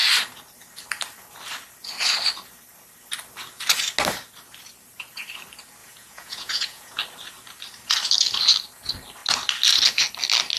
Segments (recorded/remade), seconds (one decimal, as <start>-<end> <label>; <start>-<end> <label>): 0.0-5.8 recorded; 5.8-7.0 remade; 7.0-10.6 recorded